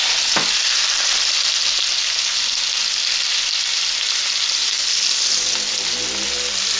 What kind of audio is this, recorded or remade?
recorded